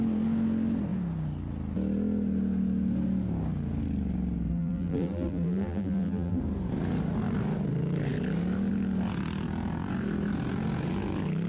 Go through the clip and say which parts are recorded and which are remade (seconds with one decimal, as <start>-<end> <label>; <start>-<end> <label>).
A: 0.0-4.5 recorded; 4.5-6.4 remade; 6.4-11.5 recorded